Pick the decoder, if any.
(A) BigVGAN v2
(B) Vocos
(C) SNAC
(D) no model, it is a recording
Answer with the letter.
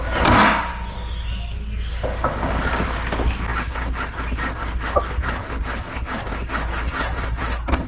D